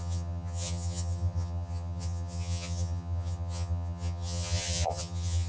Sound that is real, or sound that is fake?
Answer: fake